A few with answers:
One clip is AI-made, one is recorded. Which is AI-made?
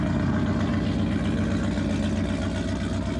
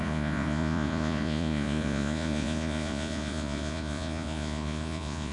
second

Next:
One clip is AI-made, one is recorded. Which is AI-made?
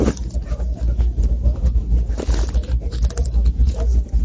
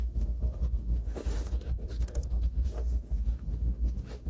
second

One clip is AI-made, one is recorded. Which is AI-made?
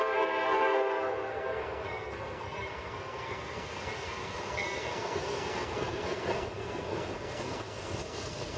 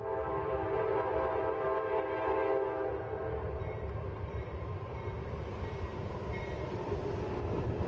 first